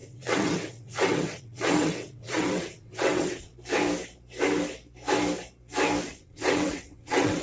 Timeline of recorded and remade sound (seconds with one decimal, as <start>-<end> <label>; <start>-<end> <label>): 0.0-3.5 remade; 3.5-6.1 recorded; 6.1-7.4 remade